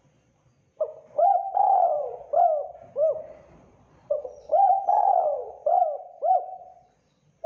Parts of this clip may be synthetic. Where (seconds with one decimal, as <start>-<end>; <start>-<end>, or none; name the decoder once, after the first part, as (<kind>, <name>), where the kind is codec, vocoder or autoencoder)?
0.0-0.5 (vocoder, Vocos); 1.1-2.3; 3.2-5.7; 6.6-7.5